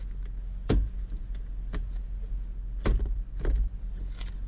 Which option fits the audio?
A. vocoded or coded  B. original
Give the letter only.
B